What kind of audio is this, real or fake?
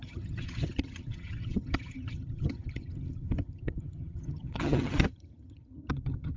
fake